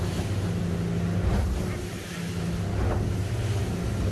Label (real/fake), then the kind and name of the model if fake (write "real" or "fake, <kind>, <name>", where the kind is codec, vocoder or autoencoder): real